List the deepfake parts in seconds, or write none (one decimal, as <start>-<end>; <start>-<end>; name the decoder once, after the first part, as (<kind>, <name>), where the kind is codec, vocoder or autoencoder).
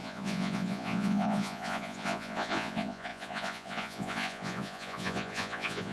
0.0-5.9 (vocoder, Vocos)